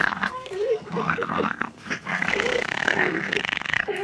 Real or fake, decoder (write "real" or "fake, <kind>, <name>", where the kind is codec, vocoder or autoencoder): fake, codec, SNAC